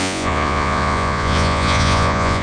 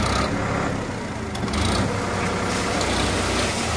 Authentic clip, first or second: second